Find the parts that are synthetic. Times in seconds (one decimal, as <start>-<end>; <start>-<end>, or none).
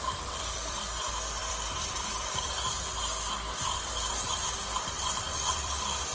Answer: 0.0-6.1